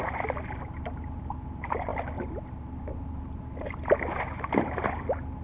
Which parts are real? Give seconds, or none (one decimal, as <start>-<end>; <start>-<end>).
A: 0.0-5.4